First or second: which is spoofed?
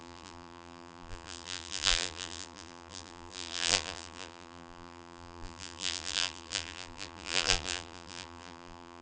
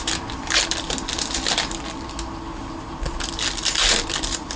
first